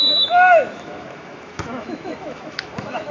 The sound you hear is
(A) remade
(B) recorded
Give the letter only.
A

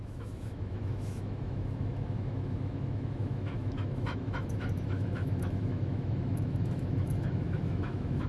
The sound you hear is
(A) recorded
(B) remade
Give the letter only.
B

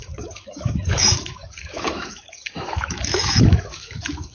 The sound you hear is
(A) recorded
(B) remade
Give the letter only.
B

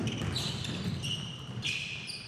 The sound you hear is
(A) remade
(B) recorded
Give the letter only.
B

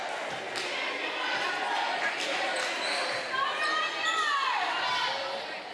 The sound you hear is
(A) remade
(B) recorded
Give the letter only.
B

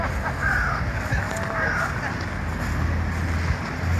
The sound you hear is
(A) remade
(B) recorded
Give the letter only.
B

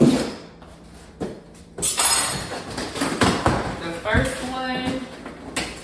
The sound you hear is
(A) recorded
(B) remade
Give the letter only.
A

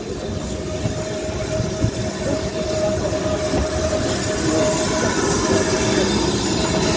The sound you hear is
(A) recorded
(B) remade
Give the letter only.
A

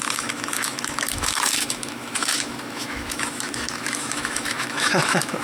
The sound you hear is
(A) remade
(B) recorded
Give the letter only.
A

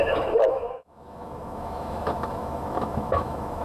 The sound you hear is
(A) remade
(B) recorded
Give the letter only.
A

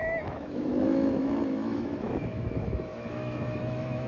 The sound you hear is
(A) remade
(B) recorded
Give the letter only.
A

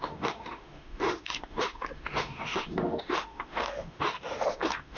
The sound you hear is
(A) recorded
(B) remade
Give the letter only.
B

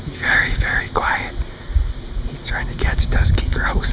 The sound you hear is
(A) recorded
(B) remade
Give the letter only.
A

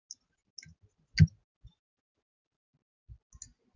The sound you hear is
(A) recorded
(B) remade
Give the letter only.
A